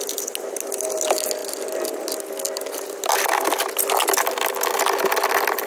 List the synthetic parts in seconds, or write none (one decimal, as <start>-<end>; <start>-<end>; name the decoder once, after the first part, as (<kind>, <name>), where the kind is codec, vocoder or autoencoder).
none